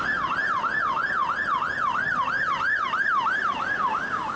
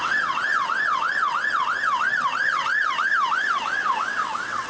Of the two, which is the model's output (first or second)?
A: second